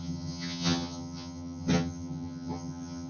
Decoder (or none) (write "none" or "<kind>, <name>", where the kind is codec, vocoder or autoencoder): vocoder, HiFi-GAN